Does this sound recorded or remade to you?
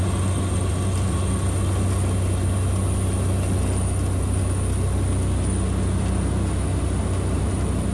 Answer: recorded